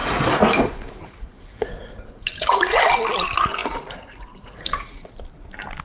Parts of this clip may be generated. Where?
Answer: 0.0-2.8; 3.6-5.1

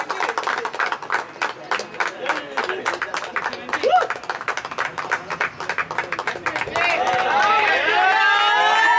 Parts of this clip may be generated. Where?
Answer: none